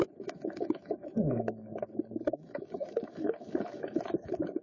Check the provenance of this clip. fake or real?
fake